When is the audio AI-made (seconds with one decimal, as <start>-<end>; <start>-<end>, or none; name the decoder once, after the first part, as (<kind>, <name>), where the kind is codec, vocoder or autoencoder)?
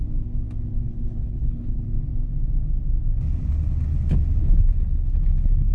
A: 0.9-1.8 (codec, HILCodec); 4.4-5.7